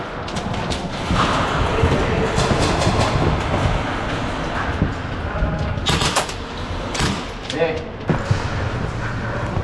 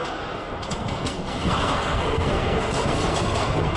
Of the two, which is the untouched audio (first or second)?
first